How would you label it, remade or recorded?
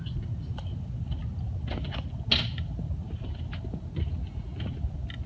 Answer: recorded